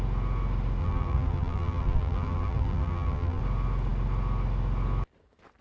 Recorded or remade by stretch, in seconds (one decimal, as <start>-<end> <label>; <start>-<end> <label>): 0.0-0.8 recorded; 0.8-3.4 remade; 3.4-5.6 recorded